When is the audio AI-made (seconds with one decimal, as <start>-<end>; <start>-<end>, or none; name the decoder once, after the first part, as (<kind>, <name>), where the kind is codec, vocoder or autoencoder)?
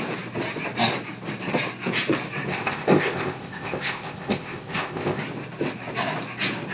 2.5-5.2 (codec, ZipCodec)